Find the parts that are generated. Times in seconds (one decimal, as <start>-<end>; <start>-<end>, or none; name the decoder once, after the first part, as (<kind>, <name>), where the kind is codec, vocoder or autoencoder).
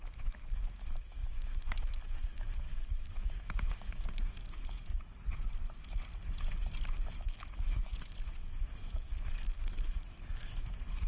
0.0-4.9 (autoencoder, DAC-VAE); 7.2-11.1